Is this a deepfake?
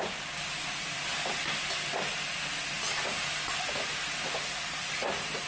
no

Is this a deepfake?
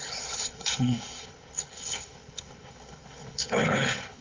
yes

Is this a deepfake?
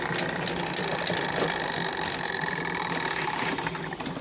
no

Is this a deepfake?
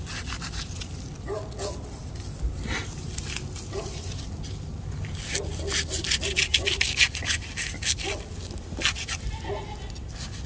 no